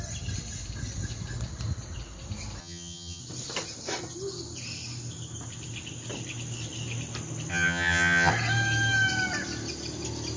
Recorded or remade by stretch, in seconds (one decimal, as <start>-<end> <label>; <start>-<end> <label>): 0.0-2.6 recorded; 2.6-3.2 remade; 3.2-7.5 recorded; 7.5-8.3 remade; 8.3-10.4 recorded